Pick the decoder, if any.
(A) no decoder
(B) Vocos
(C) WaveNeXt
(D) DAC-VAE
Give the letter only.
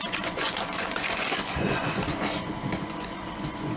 B